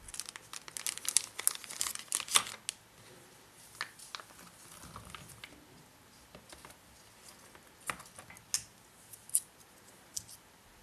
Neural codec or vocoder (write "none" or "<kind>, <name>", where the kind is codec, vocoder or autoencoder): none